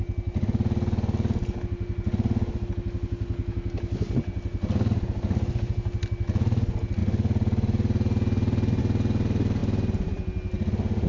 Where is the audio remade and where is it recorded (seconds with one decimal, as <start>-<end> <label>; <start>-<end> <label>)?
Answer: 0.0-11.1 recorded